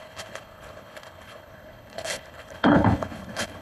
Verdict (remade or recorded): remade